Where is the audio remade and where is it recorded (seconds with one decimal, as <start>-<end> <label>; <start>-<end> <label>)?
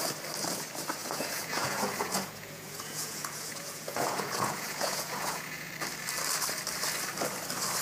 0.0-1.0 recorded; 1.0-5.7 remade; 5.7-7.8 recorded